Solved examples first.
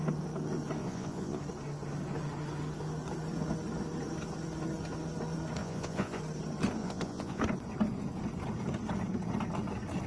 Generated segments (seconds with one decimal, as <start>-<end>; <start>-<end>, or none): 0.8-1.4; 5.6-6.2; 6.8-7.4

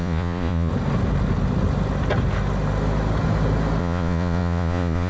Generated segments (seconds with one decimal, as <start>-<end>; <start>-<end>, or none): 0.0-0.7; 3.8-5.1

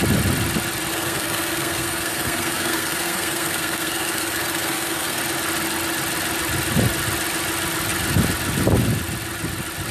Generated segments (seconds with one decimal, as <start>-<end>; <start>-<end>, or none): 0.9-5.2

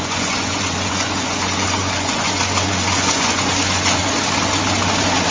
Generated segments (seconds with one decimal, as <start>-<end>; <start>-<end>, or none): 0.0-4.0